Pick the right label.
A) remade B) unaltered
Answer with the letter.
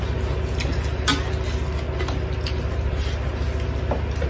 B